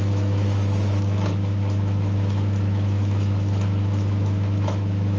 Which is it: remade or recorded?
remade